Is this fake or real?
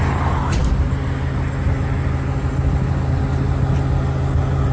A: real